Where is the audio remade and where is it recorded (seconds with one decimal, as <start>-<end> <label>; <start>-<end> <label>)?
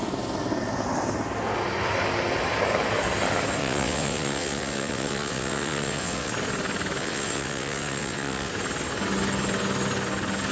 0.0-3.6 recorded; 3.6-6.3 remade; 6.3-7.0 recorded; 7.0-8.5 remade; 8.5-10.5 recorded